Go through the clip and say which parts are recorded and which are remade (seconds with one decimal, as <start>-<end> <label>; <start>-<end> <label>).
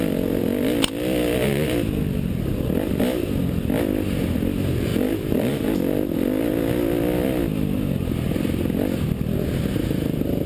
0.0-4.9 recorded; 4.9-6.4 remade; 6.4-10.5 recorded